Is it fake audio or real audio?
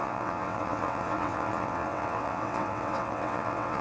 fake